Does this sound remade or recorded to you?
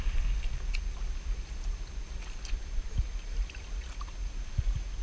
recorded